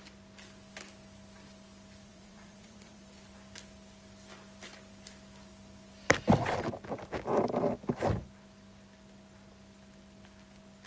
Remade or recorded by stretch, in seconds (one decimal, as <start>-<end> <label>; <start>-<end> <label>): 0.0-2.0 recorded; 2.0-3.0 remade; 3.0-10.9 recorded